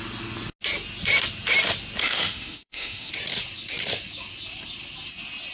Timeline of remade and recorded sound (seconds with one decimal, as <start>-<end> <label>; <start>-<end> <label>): 0.0-2.0 recorded; 2.0-3.1 remade; 3.1-5.5 recorded